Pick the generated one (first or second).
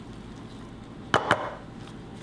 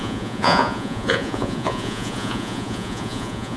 second